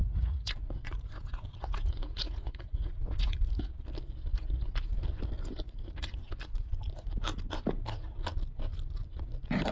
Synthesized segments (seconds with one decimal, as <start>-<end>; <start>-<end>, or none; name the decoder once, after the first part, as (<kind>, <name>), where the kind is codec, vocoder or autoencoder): 0.0-3.7 (vocoder, Vocos)